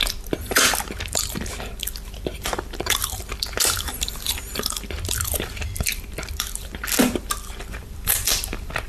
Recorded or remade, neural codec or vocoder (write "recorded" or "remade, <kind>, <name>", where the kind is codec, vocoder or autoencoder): remade, vocoder, BigVGAN v2